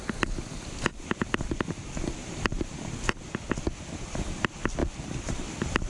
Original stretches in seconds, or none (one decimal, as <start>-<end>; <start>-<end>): 0.0-0.9; 2.8-4.8; 5.3-5.9